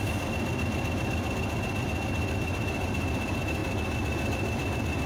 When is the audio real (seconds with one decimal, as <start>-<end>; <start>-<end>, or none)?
none